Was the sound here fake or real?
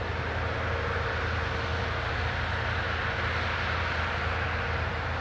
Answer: real